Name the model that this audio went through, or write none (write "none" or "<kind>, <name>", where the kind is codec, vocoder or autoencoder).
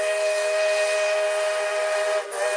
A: none